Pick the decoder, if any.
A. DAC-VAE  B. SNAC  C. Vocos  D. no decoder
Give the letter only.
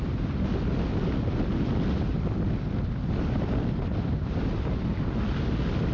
D